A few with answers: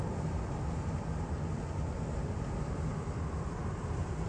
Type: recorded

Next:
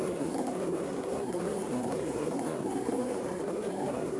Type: remade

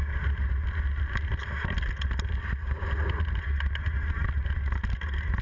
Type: recorded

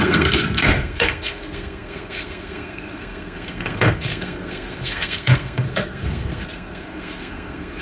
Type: remade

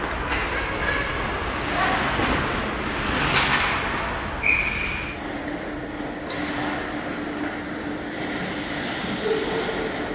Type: recorded